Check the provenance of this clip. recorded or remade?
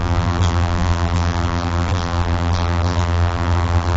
remade